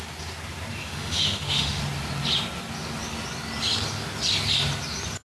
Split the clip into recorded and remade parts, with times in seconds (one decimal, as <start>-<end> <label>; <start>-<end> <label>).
0.0-0.8 recorded; 0.8-1.8 remade; 1.8-5.3 recorded